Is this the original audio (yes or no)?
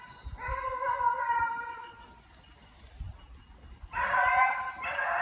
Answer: yes